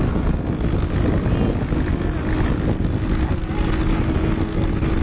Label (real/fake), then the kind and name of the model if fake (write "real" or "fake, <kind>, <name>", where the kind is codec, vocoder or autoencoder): real